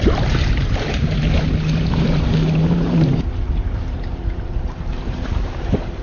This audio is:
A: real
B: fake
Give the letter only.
B